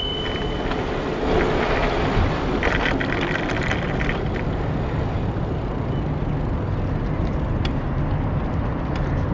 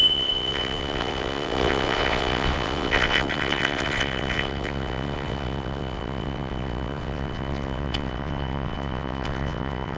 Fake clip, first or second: second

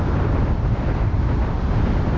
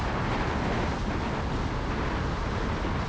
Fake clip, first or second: first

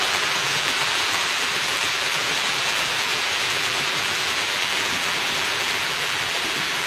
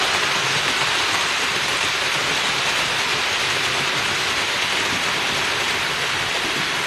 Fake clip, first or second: first